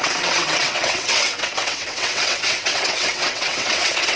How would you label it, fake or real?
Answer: fake